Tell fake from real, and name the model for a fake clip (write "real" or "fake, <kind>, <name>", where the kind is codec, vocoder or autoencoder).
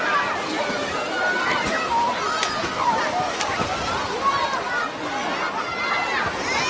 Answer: real